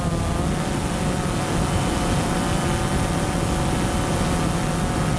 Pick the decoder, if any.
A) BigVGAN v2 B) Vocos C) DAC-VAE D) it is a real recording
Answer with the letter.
D